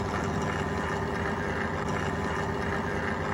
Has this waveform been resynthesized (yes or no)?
no